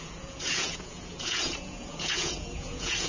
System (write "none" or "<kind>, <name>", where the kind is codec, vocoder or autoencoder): vocoder, Vocos